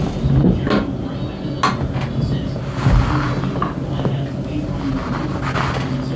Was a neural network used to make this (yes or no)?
no